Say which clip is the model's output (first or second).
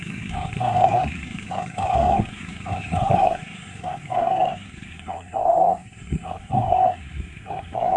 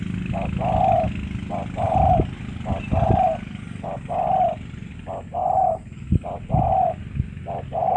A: first